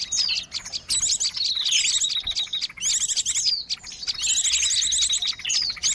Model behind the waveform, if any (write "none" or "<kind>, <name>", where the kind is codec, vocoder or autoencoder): none